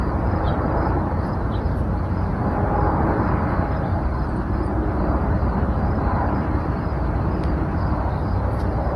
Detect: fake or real fake